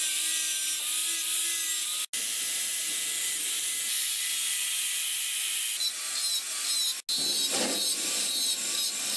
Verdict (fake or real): real